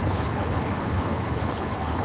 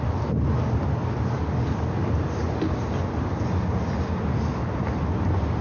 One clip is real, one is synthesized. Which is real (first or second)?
second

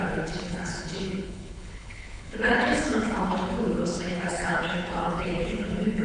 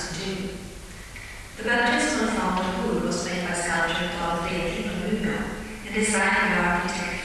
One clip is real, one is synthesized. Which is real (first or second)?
second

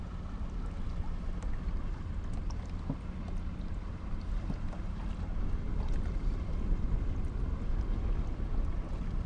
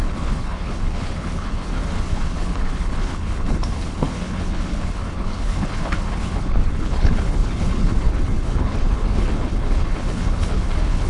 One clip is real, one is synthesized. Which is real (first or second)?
first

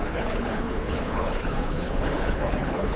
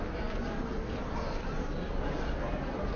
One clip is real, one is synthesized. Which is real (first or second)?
second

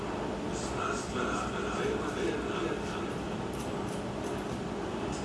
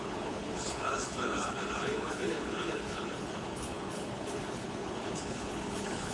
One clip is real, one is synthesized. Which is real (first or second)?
first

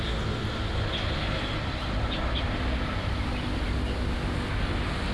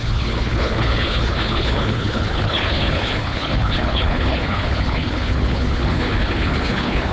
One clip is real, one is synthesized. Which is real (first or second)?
first